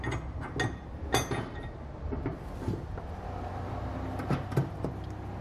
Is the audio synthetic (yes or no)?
no